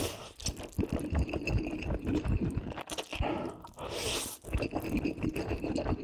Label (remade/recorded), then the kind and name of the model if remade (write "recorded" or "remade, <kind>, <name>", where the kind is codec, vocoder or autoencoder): recorded